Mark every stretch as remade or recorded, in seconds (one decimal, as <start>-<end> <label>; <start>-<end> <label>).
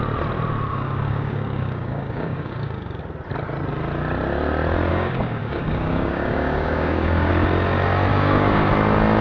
0.0-0.7 recorded; 0.7-3.0 remade; 3.0-4.9 recorded; 4.9-7.3 remade; 7.3-8.1 recorded; 8.1-8.7 remade; 8.7-9.2 recorded